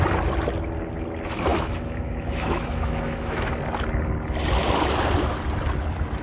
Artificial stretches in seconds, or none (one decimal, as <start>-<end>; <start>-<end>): 1.5-3.5